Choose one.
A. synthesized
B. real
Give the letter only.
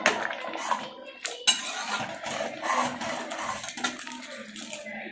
B